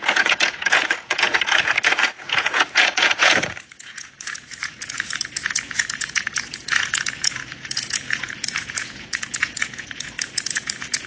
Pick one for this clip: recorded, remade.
remade